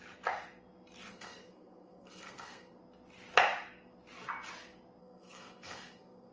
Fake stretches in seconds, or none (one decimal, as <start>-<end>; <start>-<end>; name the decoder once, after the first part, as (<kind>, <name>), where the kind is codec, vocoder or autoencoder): 1.1-2.8 (codec, SNAC); 5.0-6.3